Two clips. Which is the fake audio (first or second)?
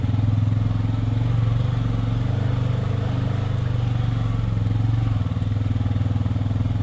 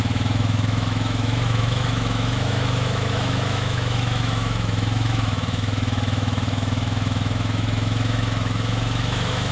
second